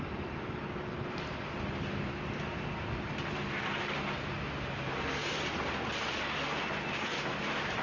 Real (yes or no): yes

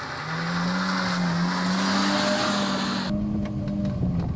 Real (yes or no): yes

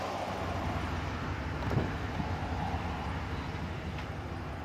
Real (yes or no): yes